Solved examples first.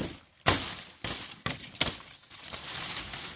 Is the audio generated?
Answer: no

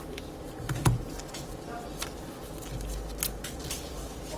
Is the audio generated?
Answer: no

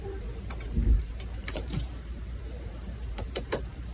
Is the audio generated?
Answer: yes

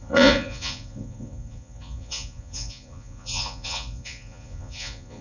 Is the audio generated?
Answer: yes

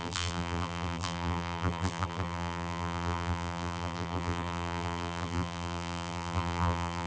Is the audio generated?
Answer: yes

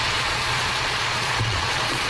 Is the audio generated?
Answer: yes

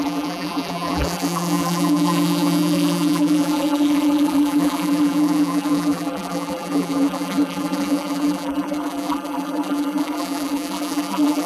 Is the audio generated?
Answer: yes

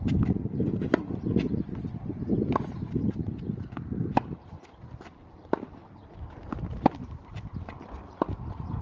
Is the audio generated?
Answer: no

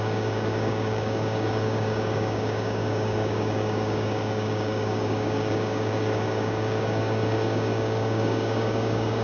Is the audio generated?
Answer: yes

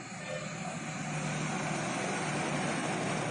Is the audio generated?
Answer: no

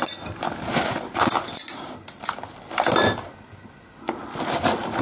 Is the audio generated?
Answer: no